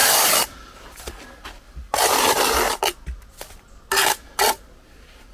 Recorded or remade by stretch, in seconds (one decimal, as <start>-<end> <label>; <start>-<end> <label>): 0.0-5.3 recorded